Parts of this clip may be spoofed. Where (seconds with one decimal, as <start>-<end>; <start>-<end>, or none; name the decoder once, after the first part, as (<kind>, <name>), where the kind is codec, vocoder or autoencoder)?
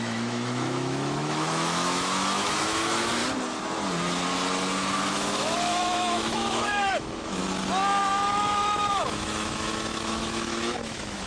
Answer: 0.0-3.2 (autoencoder, DAC-VAE); 5.1-7.4; 8.0-11.3